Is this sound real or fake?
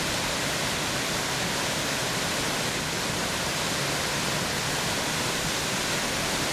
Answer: real